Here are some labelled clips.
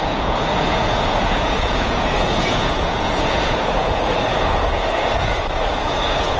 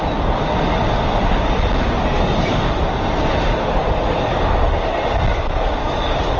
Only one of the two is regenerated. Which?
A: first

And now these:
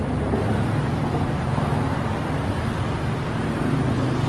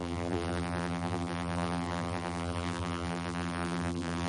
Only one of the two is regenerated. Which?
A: second